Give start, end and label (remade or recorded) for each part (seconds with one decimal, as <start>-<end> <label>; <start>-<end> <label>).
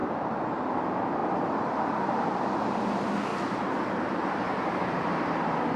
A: 0.0-0.5 remade; 0.5-3.3 recorded; 3.3-4.8 remade; 4.8-5.8 recorded